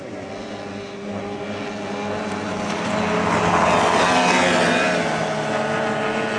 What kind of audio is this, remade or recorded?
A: recorded